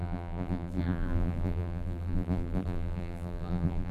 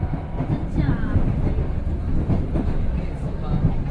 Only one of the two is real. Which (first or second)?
second